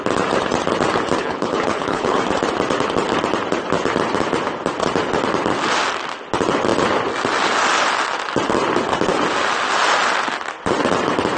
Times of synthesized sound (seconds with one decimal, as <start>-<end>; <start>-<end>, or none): 1.2-2.2